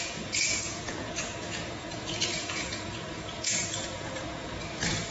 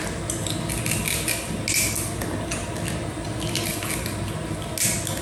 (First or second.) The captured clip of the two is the second